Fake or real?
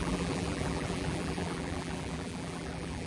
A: fake